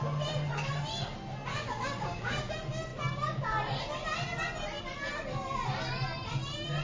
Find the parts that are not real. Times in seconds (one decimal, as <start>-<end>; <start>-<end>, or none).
1.5-2.5